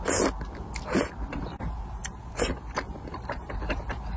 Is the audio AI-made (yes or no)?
no